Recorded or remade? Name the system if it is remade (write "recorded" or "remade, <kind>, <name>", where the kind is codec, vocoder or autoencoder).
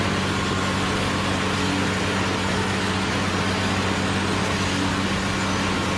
recorded